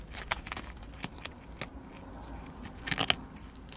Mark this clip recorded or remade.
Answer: recorded